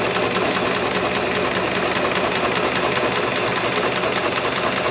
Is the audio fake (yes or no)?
no